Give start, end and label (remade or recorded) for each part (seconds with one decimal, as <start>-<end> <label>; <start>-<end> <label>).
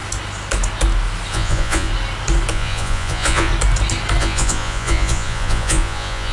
0.0-1.3 recorded; 1.3-1.9 remade; 1.9-2.5 recorded; 2.5-3.5 remade; 3.5-4.2 recorded; 4.2-6.3 remade